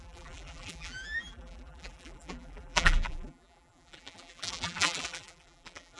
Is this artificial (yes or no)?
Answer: yes